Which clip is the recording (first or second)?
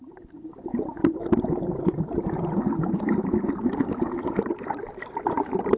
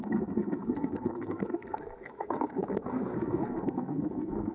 first